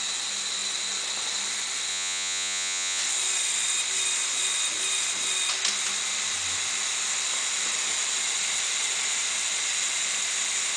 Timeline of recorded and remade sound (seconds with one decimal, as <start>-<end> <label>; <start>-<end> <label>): 0.0-1.9 recorded; 1.9-3.0 remade; 3.0-10.8 recorded